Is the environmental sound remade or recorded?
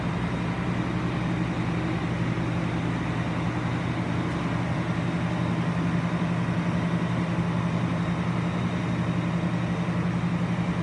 recorded